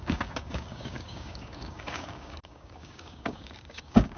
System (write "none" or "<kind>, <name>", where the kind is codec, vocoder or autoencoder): codec, DAC